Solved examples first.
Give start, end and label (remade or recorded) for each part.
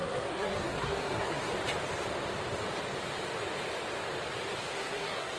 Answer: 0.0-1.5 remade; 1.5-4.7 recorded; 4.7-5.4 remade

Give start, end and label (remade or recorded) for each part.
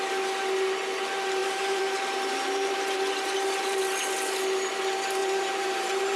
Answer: 0.0-1.4 recorded; 1.4-3.8 remade; 3.8-5.2 recorded; 5.2-6.2 remade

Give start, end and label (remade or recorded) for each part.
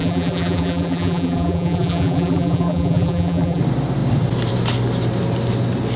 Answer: 0.0-3.6 remade; 3.6-6.0 recorded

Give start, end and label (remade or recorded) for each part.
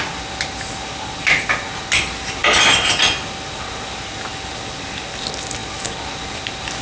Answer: 0.0-6.8 recorded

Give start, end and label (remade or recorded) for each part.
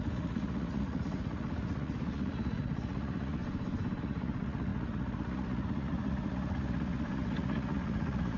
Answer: 0.0-3.4 remade; 3.4-4.0 recorded; 4.0-8.4 remade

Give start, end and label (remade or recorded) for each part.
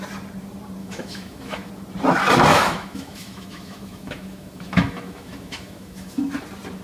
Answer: 0.0-0.8 recorded; 0.8-1.7 remade; 1.7-2.5 recorded; 2.5-6.2 remade; 6.2-6.8 recorded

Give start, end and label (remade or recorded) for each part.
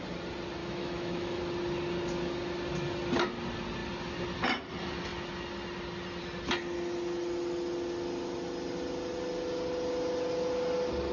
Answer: 0.0-0.6 recorded; 0.6-1.4 remade; 1.4-11.1 recorded